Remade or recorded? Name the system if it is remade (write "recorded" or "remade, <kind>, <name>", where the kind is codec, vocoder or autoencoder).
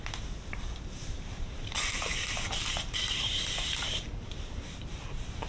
remade, vocoder, BigVGAN v2